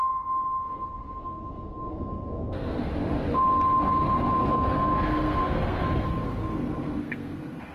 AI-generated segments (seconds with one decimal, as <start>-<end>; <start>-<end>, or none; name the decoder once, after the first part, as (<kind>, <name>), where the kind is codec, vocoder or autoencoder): 1.0-2.9 (codec, SNAC); 4.4-7.7